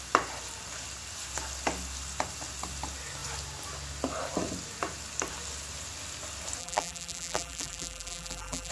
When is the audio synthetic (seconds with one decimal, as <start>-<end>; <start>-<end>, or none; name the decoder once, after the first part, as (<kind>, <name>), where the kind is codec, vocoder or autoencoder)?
6.6-8.7 (vocoder, BigVGAN v2)